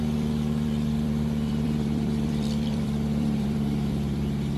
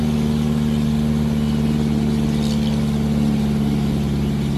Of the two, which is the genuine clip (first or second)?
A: second